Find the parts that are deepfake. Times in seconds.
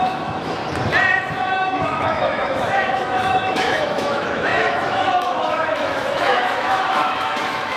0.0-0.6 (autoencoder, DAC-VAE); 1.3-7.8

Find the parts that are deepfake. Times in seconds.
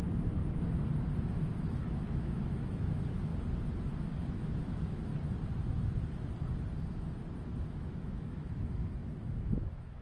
0.0-0.4 (autoencoder, DAC-VAE); 1.2-3.3; 4.2-5.1; 7.6-10.0